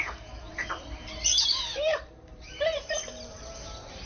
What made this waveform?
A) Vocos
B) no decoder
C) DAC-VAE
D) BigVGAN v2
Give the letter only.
D